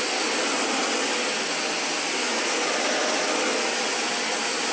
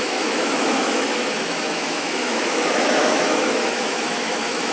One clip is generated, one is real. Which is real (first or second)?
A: first